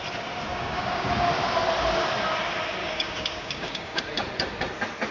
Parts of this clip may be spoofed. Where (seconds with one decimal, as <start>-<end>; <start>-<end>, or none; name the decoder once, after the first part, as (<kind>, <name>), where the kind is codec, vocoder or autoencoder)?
0.5-1.1 (codec, DAC); 2.8-4.0